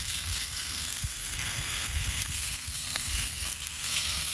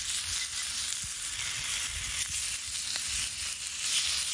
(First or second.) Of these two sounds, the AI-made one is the first